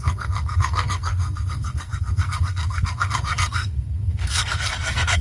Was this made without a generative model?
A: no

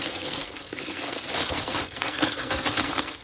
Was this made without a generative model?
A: no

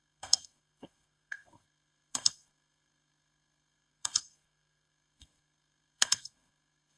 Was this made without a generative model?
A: no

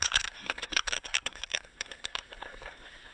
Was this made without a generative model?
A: no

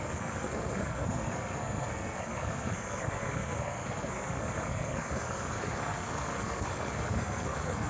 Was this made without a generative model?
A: no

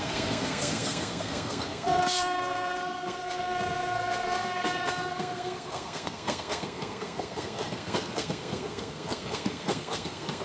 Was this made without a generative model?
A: no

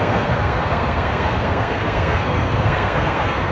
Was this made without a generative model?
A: no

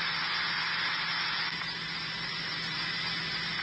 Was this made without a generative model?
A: yes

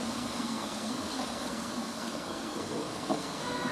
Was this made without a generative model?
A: no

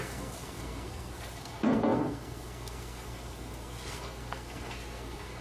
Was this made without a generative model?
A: no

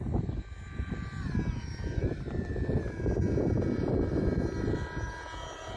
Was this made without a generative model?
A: yes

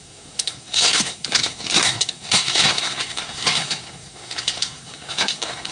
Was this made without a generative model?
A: no